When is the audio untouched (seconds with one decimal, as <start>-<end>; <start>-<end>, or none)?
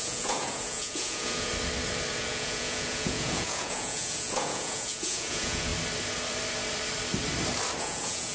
1.5-2.1; 5.7-7.8